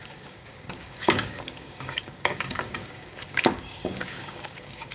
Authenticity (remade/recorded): remade